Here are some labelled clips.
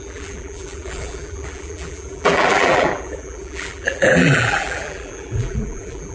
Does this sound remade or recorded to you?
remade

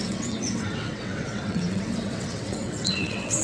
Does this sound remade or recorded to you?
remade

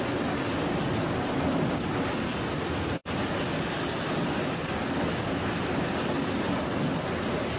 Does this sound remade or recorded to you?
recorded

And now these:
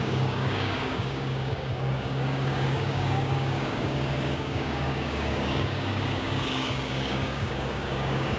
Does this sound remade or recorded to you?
remade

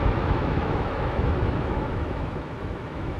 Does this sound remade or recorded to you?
remade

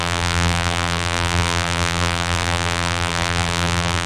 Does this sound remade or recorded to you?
remade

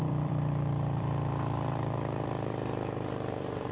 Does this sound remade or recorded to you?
remade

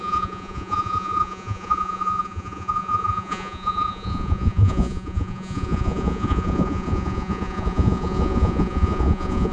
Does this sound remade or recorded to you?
remade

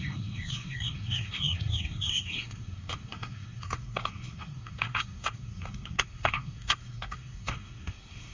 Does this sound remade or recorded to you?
remade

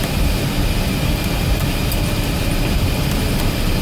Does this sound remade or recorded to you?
recorded